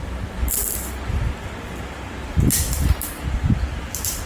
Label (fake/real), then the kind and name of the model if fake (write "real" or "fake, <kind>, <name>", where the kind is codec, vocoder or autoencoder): real